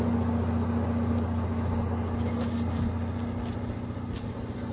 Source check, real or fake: real